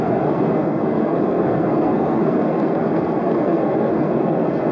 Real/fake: fake